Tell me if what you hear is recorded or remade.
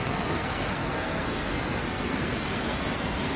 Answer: remade